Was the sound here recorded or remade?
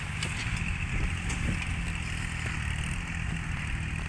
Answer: recorded